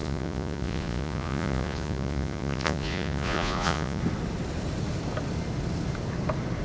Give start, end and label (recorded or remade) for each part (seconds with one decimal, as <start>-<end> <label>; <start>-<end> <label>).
0.0-4.0 remade; 4.0-6.6 recorded